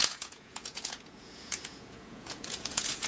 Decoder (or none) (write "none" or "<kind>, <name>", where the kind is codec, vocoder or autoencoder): vocoder, Vocos